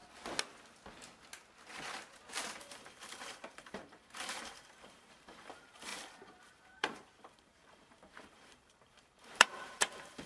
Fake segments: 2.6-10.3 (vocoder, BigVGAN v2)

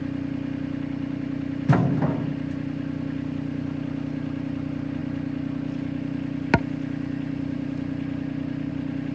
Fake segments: none

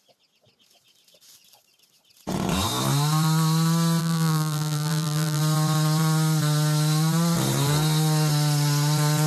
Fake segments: 4.0-5.4 (vocoder, BigVGAN v2)

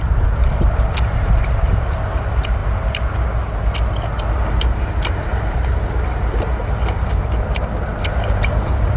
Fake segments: 0.0-2.6 (vocoder, BigVGAN v2); 4.5-9.0

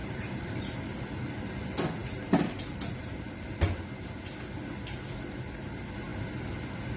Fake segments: 0.0-0.6 (vocoder, BigVGAN v2)

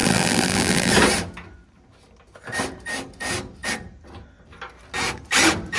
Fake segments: 0.0-0.9 (vocoder, BigVGAN v2)

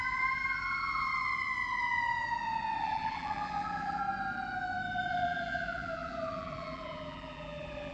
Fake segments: 0.0-1.1 (vocoder, BigVGAN v2); 2.8-4.0; 5.1-7.9

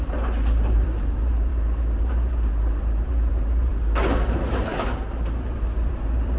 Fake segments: 0.0-6.4 (vocoder, BigVGAN v2)